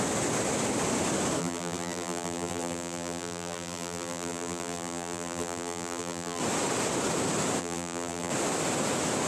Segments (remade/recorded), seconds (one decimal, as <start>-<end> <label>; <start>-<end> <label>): 0.0-1.4 recorded; 1.4-6.4 remade; 6.4-7.6 recorded; 7.6-8.3 remade; 8.3-9.3 recorded